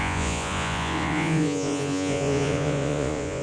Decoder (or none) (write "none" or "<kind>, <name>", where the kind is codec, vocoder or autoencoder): vocoder, Vocos